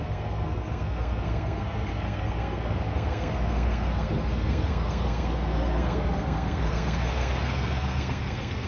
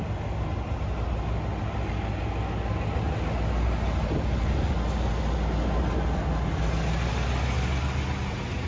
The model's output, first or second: first